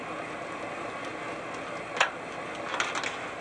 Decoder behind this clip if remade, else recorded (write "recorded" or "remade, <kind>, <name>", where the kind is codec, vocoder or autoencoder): recorded